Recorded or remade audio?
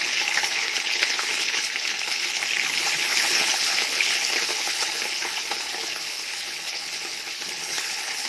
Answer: remade